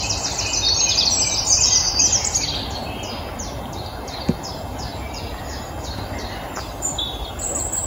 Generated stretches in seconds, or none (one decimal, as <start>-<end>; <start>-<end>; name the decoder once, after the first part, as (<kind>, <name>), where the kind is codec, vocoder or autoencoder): none